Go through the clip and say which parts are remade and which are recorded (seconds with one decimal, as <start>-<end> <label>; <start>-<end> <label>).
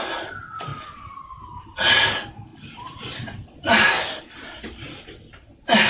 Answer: 0.0-5.9 recorded